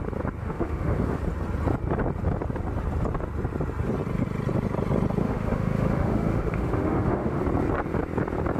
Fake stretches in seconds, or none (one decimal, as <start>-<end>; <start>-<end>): 0.4-1.2; 5.2-7.4